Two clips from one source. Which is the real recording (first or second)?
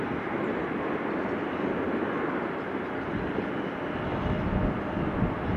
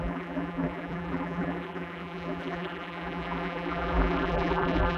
first